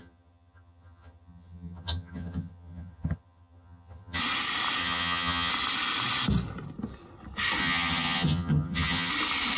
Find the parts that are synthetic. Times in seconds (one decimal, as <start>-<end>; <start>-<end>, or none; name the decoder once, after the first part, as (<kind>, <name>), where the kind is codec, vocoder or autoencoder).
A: 0.0-4.2 (vocoder, HiFi-GAN); 4.8-5.5; 7.6-9.1